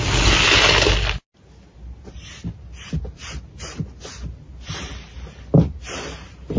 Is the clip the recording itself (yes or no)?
yes